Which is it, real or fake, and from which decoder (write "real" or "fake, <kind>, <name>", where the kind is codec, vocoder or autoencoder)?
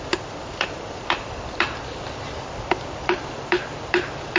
real